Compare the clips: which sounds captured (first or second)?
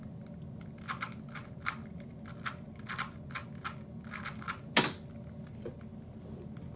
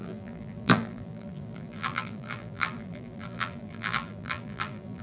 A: first